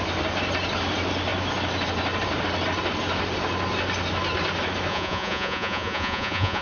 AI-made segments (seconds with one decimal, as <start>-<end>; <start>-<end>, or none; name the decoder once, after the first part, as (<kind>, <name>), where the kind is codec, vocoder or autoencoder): 4.9-6.6 (vocoder, Vocos)